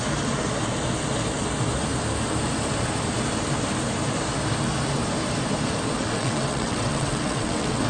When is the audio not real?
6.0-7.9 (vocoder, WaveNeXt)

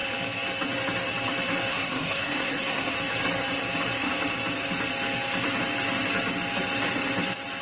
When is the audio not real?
1.7-2.9 (codec, SNAC)

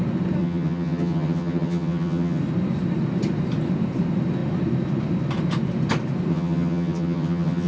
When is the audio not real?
0.4-2.4 (vocoder, HiFi-GAN); 6.3-7.7

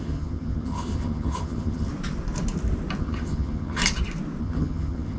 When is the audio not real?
0.0-1.9 (vocoder, HiFi-GAN); 3.0-3.8; 4.4-5.2

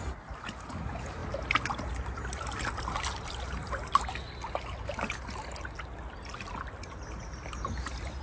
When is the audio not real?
none